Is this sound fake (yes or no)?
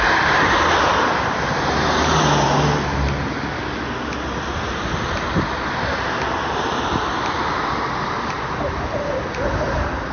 no